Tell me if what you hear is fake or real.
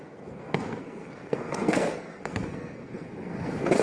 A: fake